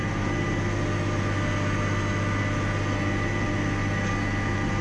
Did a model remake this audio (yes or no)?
no